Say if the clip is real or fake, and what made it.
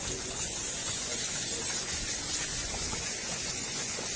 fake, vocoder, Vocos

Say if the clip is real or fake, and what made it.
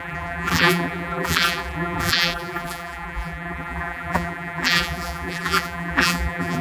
fake, vocoder, BigVGAN v2